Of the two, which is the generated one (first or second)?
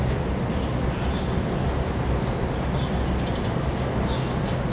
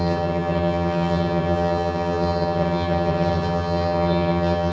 second